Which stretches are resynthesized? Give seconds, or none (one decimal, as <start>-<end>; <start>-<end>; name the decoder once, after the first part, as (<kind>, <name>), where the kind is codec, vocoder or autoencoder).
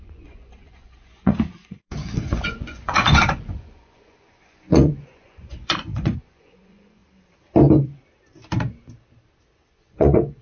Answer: 0.0-7.0 (vocoder, Vocos); 9.7-10.4